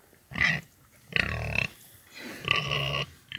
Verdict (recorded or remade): recorded